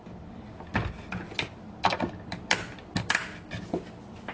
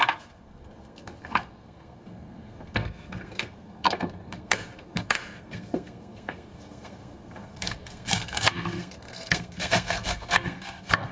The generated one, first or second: second